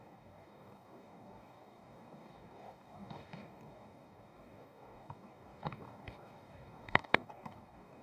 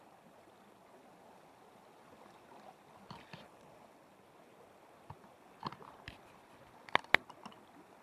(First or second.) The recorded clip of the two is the second